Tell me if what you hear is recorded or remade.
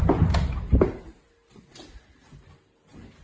recorded